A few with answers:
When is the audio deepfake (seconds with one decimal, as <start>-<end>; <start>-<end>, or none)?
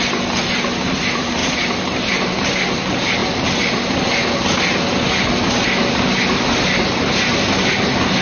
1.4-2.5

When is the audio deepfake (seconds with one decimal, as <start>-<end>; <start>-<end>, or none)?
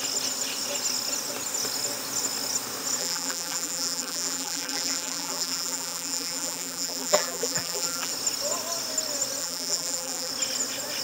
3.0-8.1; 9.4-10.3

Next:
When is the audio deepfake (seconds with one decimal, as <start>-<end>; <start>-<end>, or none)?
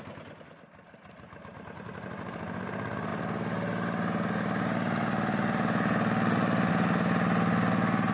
none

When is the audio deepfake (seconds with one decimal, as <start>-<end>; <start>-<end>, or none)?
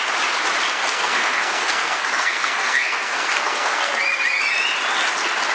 0.7-4.0